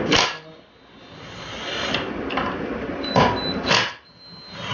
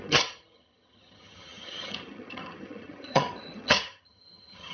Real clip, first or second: first